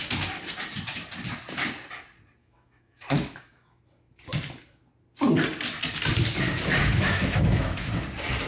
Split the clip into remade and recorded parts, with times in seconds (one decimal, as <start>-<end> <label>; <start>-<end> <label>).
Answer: 0.0-2.4 recorded; 2.4-3.8 remade; 3.8-6.8 recorded; 6.8-7.9 remade; 7.9-8.5 recorded

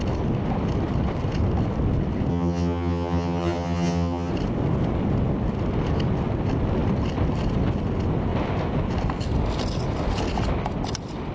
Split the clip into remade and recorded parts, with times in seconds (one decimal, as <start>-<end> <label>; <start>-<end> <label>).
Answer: 0.0-2.3 recorded; 2.3-4.3 remade; 4.3-11.3 recorded

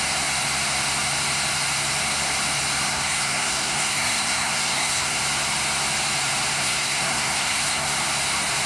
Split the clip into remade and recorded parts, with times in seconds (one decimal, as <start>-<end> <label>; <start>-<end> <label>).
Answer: 0.0-2.9 recorded; 2.9-5.2 remade; 5.2-6.5 recorded; 6.5-7.9 remade; 7.9-8.7 recorded

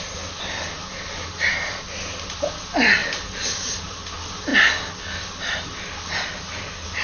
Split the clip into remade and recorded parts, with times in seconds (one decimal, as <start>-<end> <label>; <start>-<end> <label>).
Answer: 0.0-7.0 recorded

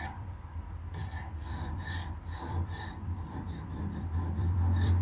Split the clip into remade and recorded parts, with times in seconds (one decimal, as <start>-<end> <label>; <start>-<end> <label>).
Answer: 0.0-5.0 remade

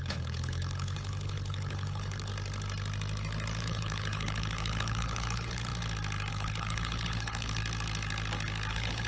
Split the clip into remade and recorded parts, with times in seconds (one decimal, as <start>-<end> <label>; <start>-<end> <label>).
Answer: 0.0-2.3 remade; 2.3-3.6 recorded; 3.6-5.7 remade; 5.7-6.3 recorded; 6.3-7.6 remade; 7.6-8.7 recorded; 8.7-9.1 remade